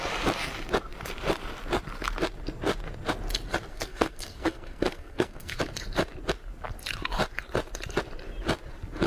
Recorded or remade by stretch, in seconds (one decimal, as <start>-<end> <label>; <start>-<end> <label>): 0.0-3.7 recorded; 3.7-5.6 remade; 5.6-9.1 recorded